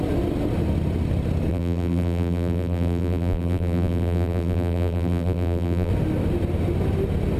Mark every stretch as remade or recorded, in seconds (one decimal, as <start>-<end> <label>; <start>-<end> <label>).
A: 0.0-1.5 recorded; 1.5-5.9 remade; 5.9-7.4 recorded